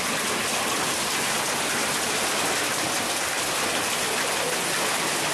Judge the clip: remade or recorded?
recorded